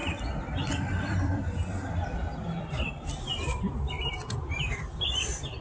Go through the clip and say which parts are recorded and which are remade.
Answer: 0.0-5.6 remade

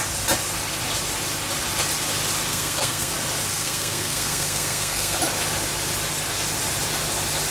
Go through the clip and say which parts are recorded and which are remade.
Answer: 0.0-2.5 recorded; 2.5-3.1 remade; 3.1-3.5 recorded; 3.5-5.2 remade; 5.2-7.5 recorded

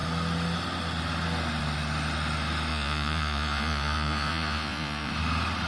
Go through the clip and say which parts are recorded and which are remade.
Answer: 0.0-2.7 recorded; 2.7-5.1 remade; 5.1-5.7 recorded

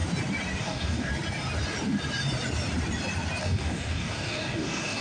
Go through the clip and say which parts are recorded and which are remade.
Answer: 0.0-0.6 recorded; 0.6-1.1 remade; 1.1-3.4 recorded; 3.4-5.0 remade

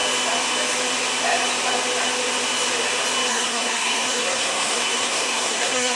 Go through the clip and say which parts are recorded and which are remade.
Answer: 0.0-3.3 recorded; 3.3-6.0 remade